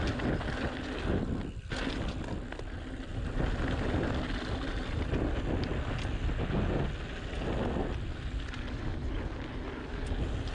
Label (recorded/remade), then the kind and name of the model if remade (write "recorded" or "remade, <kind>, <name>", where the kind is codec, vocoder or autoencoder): recorded